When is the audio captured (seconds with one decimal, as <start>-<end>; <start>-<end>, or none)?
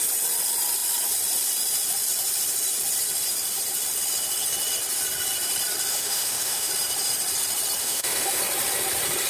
0.0-5.9; 6.7-7.8; 8.4-9.3